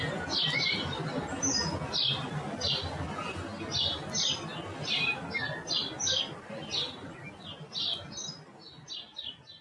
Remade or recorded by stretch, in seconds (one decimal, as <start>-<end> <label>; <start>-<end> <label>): 0.0-9.6 recorded